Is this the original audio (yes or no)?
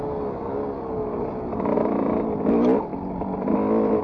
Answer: yes